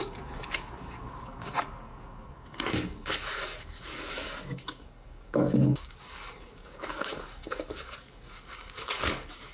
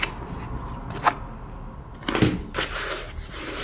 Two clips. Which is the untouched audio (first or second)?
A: second